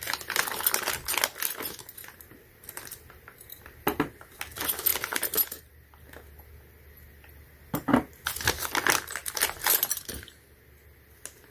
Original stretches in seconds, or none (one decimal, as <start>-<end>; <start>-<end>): 0.0-4.9; 6.0-11.5